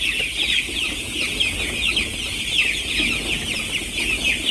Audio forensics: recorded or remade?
recorded